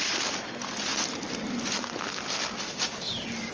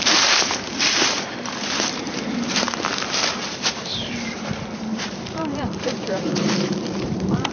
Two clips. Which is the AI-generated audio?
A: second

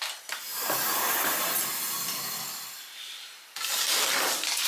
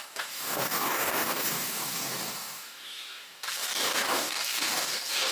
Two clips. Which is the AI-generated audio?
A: second